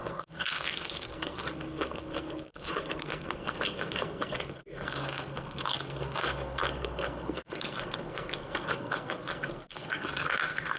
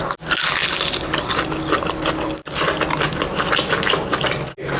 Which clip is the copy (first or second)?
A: first